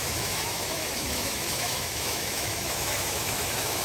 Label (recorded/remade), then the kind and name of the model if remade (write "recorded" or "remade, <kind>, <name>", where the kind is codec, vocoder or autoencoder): remade, autoencoder, DAC-VAE